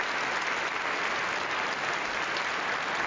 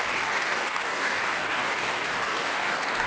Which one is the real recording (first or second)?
first